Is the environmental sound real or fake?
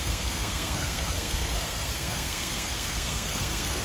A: fake